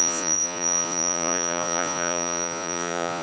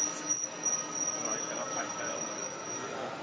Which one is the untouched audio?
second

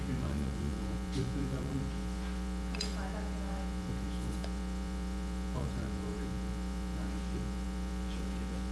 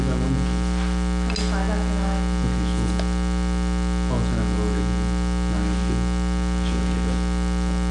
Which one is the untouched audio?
second